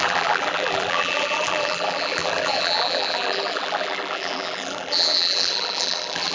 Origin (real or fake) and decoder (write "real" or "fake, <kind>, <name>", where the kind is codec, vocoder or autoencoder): fake, vocoder, BigVGAN v2